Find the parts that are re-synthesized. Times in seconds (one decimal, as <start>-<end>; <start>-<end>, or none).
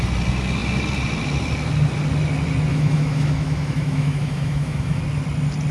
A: 2.7-5.0